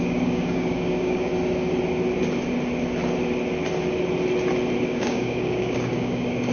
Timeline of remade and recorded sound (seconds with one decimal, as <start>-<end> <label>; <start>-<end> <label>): 0.0-1.3 remade; 1.3-4.8 recorded; 4.8-6.5 remade